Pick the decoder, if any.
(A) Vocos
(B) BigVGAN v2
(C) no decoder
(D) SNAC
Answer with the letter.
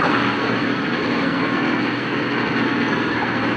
D